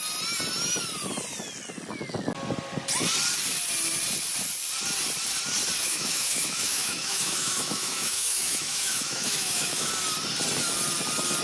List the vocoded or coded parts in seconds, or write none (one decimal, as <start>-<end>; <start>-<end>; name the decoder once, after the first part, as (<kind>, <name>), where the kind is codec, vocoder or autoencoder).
5.8-9.9 (autoencoder, DAC-VAE)